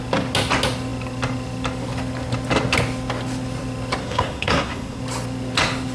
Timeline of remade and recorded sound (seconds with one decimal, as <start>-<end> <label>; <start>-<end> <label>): 0.0-4.0 recorded; 4.0-5.0 remade; 5.0-5.9 recorded